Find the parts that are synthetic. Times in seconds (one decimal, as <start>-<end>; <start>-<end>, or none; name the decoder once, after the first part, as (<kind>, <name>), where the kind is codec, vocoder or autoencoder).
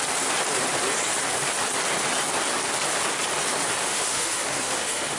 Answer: 3.8-5.2 (autoencoder, DAC-VAE)